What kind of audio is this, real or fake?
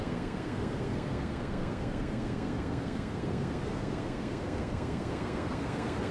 fake